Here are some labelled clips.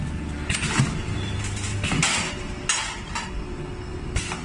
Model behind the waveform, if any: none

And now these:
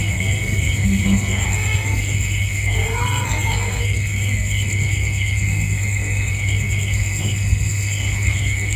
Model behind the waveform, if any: codec, SNAC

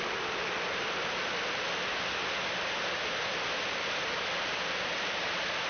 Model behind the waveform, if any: none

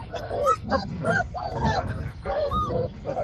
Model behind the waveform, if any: codec, SNAC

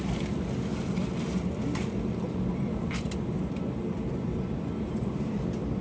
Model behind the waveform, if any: vocoder, BigVGAN v2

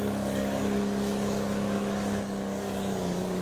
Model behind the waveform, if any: codec, DAC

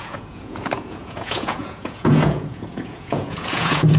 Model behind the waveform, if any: vocoder, Vocos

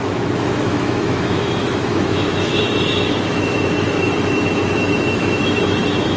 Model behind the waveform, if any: autoencoder, DAC-VAE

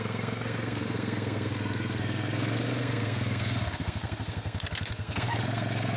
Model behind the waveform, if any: codec, SNAC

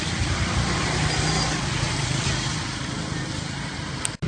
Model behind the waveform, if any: none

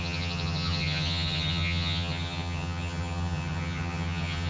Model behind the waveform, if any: vocoder, HiFi-GAN